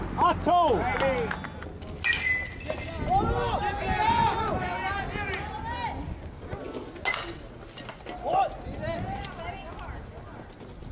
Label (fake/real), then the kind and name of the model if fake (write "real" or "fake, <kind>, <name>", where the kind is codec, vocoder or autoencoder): real